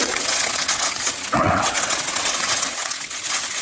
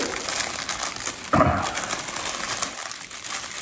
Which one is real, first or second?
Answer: second